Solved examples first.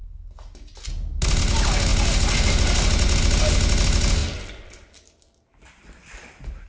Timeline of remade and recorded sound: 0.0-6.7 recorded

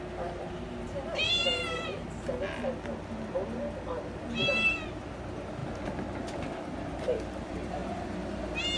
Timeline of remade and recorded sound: 0.0-8.8 recorded